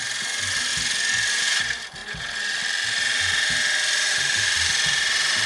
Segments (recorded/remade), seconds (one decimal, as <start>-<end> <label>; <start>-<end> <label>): 0.0-0.7 remade; 0.7-1.3 recorded; 1.3-5.5 remade